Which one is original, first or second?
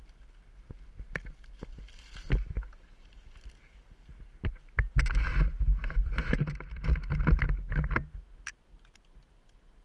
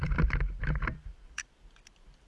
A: first